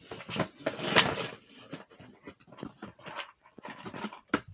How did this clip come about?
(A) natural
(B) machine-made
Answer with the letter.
A